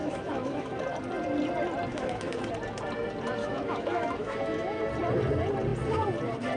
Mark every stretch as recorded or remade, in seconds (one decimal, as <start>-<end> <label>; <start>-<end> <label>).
0.0-0.8 remade; 0.8-1.9 recorded; 1.9-2.5 remade; 2.5-3.4 recorded; 3.4-4.8 remade; 4.8-6.6 recorded